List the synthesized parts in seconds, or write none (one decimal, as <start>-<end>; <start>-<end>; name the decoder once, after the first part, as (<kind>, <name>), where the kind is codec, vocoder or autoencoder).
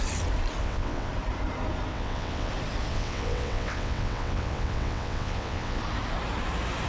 0.6-1.1 (vocoder, WaveNeXt); 1.9-2.5; 2.9-5.8